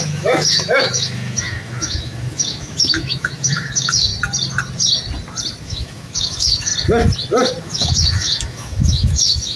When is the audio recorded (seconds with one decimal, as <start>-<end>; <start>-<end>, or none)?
4.1-5.6; 6.7-7.6